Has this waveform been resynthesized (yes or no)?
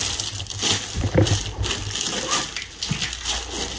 no